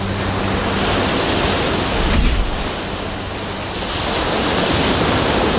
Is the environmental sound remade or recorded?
recorded